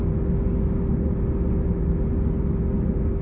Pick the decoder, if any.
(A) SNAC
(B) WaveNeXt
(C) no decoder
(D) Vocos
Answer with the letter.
C